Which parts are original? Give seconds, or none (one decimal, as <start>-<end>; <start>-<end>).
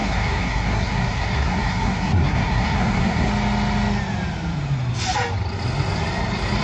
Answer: 3.3-6.6